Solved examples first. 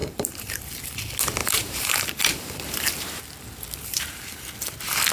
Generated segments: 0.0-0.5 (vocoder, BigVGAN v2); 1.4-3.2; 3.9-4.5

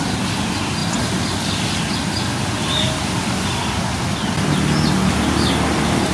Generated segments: 0.8-3.8 (vocoder, BigVGAN v2)

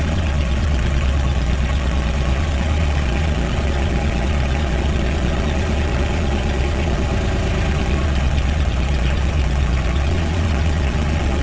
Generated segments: 0.0-7.1 (vocoder, Vocos); 7.7-11.4

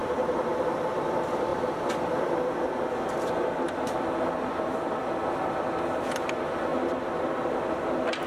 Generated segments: none

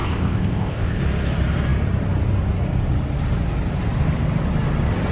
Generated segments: 0.0-1.0 (codec, ZipCodec)

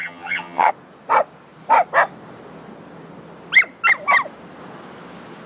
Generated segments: 0.0-0.7 (vocoder, HiFi-GAN)

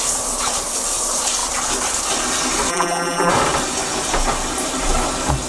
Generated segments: 2.7-3.3 (vocoder, BigVGAN v2)